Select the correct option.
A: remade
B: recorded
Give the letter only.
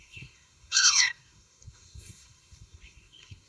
A